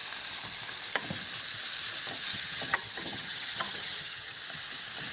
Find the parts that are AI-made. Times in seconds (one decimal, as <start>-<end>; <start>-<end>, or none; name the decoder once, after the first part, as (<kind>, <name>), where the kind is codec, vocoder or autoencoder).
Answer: 2.3-4.4 (vocoder, HiFi-GAN)